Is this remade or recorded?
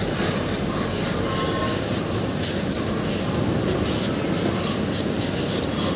recorded